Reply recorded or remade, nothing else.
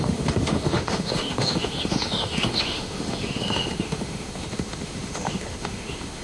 remade